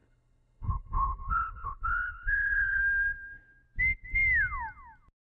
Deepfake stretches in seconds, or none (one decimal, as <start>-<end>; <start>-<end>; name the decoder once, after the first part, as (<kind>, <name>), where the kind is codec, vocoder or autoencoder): 0.0-2.8 (codec, HILCodec)